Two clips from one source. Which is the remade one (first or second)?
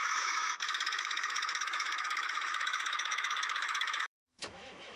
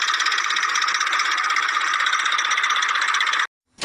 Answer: first